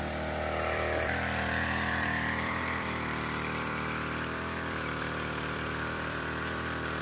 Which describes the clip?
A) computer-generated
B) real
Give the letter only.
A